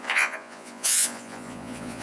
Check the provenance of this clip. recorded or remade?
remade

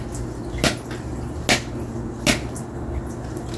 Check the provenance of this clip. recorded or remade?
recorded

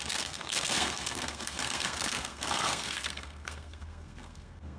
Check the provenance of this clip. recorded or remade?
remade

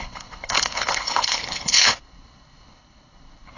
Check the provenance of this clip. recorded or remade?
remade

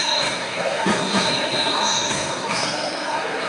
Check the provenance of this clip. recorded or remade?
remade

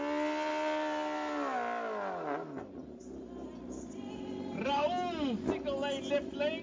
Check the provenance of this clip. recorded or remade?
recorded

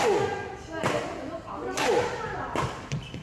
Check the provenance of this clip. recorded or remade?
recorded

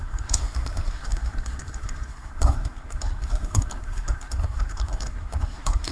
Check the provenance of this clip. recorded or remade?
remade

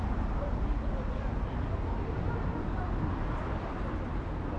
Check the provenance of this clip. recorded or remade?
recorded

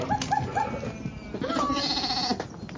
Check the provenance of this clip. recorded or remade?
recorded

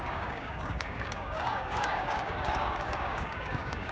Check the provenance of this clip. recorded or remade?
remade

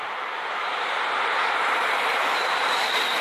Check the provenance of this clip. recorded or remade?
remade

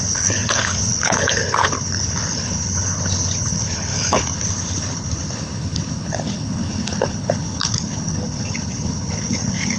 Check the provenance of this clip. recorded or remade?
remade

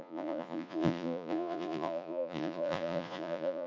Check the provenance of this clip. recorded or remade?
remade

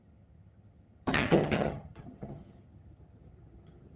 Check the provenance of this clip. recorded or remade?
remade